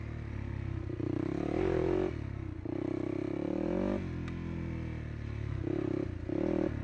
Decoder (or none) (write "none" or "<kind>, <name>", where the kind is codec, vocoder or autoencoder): none